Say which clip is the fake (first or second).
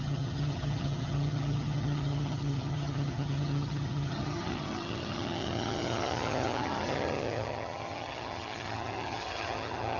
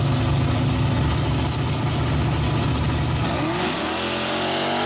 first